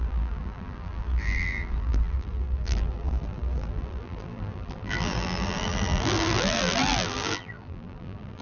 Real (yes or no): no